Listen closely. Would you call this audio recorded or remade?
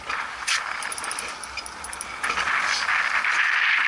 recorded